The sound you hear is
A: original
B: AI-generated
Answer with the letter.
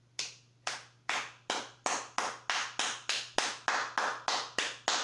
A